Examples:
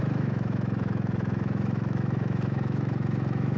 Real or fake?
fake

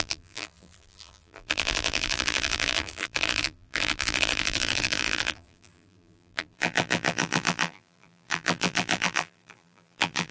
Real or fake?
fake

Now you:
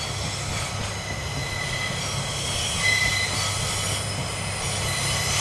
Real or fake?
real